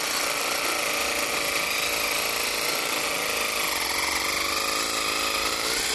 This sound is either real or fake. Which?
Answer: real